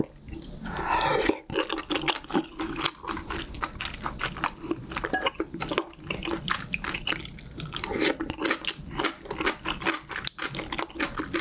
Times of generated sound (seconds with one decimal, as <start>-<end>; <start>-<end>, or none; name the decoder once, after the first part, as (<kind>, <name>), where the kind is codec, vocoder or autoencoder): none